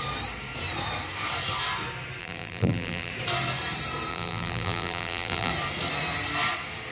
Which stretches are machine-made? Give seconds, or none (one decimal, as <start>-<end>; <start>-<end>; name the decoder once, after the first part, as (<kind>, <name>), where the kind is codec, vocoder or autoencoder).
2.2-3.1 (vocoder, BigVGAN v2); 4.1-5.5